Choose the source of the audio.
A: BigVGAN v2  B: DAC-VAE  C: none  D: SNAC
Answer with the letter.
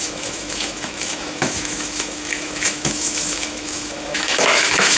B